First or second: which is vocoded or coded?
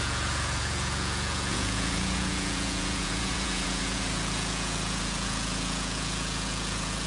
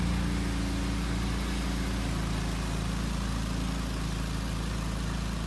first